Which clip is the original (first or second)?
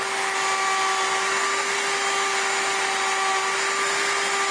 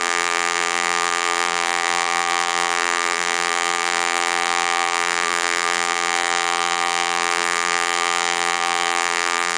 first